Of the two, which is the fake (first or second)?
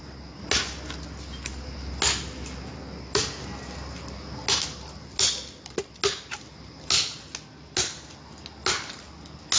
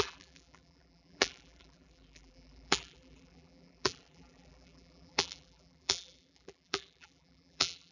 second